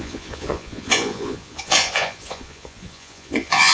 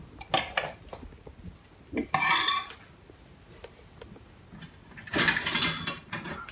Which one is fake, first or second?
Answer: first